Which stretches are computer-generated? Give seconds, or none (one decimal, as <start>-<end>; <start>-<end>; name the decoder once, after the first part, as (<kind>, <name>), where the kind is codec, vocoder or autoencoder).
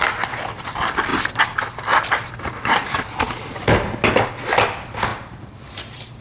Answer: 5.1-6.2 (vocoder, BigVGAN v2)